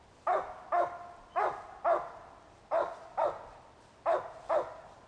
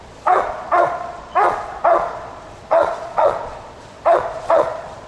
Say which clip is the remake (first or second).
second